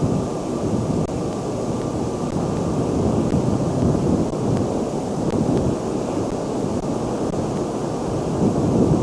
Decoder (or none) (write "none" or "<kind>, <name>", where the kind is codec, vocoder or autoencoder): none